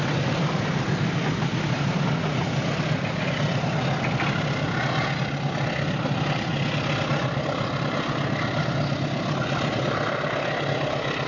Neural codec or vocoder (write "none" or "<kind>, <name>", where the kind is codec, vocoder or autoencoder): none